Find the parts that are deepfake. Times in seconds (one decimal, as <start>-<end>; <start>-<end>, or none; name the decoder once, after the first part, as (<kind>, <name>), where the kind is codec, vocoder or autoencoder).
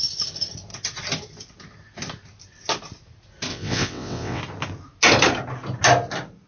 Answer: 3.5-4.4 (vocoder, WaveNeXt)